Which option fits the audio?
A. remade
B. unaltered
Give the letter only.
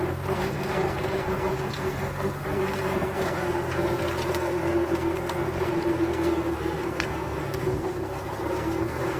A